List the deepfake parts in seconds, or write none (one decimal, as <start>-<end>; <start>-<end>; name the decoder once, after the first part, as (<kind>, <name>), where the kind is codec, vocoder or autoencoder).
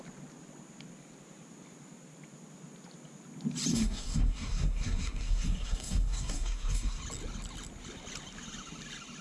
3.7-7.0 (codec, SNAC)